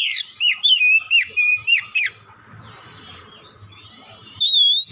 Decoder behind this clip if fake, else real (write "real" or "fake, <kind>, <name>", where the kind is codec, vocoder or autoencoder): fake, vocoder, BigVGAN v2